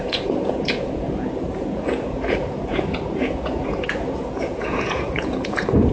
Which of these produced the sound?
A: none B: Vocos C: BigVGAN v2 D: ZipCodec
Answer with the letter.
B